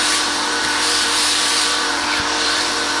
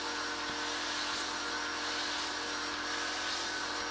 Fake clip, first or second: first